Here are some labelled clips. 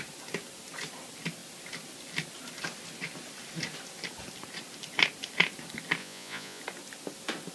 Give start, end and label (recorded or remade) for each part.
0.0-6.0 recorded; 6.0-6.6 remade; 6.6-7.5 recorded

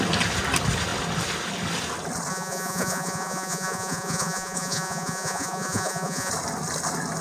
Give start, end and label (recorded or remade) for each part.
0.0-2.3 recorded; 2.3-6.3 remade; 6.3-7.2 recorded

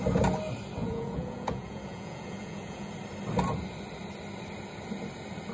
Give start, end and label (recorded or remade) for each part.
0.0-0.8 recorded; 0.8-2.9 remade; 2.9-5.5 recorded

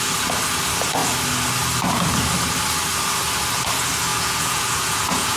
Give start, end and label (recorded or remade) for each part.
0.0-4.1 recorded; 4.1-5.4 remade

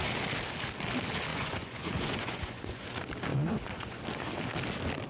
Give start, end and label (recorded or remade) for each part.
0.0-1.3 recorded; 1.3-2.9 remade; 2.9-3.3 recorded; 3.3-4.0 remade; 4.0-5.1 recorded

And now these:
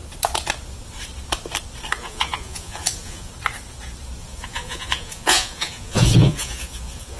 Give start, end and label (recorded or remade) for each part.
0.0-2.0 recorded; 2.0-3.3 remade; 3.3-4.2 recorded; 4.2-7.2 remade